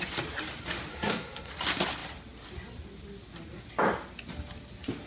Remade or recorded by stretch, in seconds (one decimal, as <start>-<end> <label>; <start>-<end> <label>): 0.0-0.9 recorded; 0.9-1.5 remade; 1.5-5.1 recorded